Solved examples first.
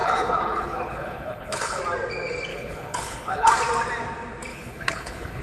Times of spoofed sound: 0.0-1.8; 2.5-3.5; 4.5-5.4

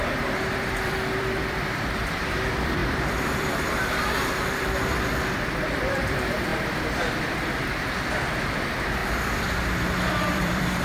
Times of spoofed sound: 0.0-6.5; 7.2-9.0; 10.3-10.8